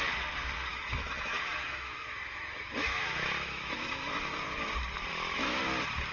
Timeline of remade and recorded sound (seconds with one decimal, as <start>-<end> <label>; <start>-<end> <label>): 0.0-0.7 recorded; 0.7-4.4 remade; 4.4-5.1 recorded; 5.1-5.6 remade; 5.6-6.1 recorded